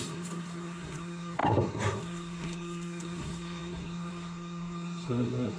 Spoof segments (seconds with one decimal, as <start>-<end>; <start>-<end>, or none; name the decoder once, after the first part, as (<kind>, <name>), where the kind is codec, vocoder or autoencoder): 0.0-5.6 (codec, SNAC)